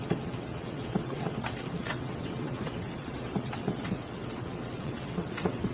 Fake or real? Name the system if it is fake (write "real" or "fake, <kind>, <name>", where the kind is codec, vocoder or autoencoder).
fake, vocoder, WaveNeXt